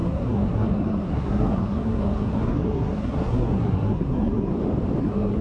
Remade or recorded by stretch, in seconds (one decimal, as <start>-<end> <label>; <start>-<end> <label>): 0.0-4.5 remade; 4.5-5.0 recorded; 5.0-5.4 remade